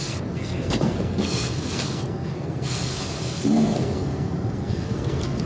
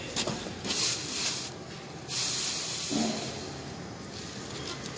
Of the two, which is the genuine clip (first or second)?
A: second